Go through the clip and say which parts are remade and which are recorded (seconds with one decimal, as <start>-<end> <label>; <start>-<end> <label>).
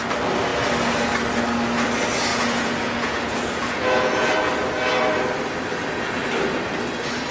0.0-2.3 recorded; 2.3-4.3 remade; 4.3-7.3 recorded